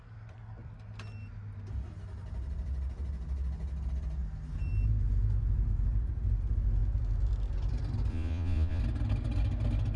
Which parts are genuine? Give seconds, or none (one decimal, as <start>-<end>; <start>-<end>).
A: 0.0-8.1; 8.8-10.0